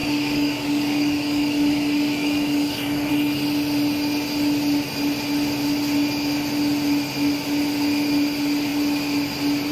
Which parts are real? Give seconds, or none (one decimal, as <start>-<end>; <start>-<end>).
3.1-9.7